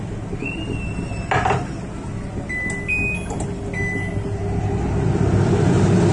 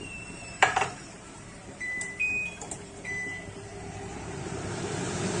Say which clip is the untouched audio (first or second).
first